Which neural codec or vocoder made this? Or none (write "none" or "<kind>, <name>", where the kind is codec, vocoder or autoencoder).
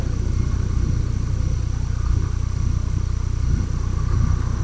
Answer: none